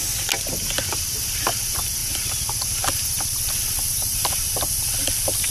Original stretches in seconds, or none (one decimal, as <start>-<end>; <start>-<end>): 0.0-5.5